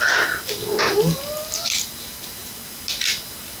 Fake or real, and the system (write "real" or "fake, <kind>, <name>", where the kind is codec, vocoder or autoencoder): real